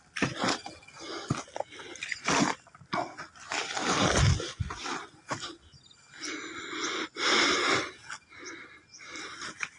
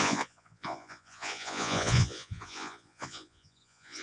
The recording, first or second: first